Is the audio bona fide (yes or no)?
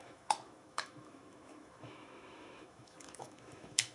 no